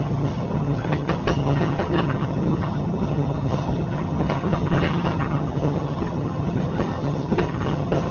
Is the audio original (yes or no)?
no